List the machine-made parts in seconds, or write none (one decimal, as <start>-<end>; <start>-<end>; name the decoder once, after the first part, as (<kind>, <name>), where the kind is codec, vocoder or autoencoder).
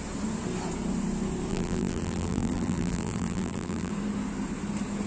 1.5-3.9 (vocoder, BigVGAN v2)